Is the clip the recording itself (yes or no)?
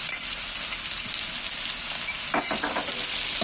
yes